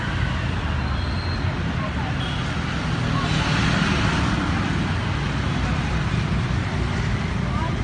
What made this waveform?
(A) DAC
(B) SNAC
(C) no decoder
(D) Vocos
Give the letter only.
C